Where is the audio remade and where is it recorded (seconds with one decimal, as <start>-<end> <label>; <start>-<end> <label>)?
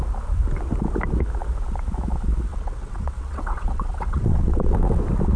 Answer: 0.0-2.5 recorded; 2.5-5.0 remade; 5.0-5.4 recorded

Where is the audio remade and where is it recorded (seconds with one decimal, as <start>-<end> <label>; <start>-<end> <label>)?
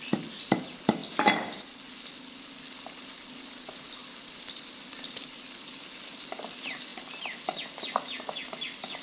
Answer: 0.0-9.0 recorded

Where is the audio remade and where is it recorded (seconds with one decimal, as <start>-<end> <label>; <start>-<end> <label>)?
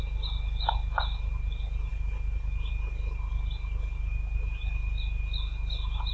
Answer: 0.0-6.1 recorded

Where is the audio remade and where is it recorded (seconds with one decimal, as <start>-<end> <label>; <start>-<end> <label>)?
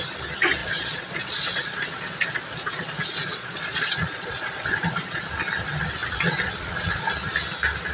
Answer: 0.0-0.6 recorded; 0.6-5.3 remade; 5.3-6.0 recorded; 6.0-7.1 remade; 7.1-7.9 recorded